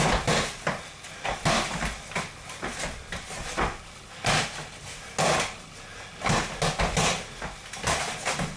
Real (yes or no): yes